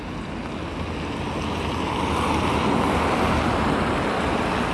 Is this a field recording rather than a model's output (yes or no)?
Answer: yes